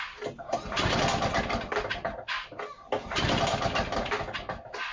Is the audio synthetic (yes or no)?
no